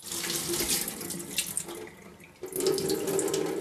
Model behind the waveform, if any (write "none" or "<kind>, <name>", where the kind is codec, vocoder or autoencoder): none